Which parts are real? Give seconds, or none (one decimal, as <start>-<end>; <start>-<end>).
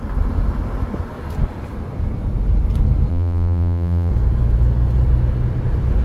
0.0-3.1; 4.1-6.0